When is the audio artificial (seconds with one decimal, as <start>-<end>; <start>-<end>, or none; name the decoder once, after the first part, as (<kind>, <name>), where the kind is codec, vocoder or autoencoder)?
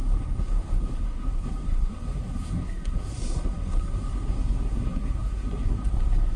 0.0-6.4 (codec, SNAC)